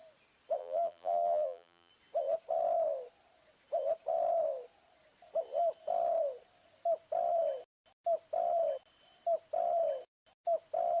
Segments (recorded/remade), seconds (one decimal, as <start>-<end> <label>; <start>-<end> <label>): 0.0-0.6 recorded; 0.6-1.9 remade; 1.9-11.0 recorded